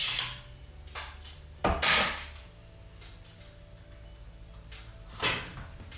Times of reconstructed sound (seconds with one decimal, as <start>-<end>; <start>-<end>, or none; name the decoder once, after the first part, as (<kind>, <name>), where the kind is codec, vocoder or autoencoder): none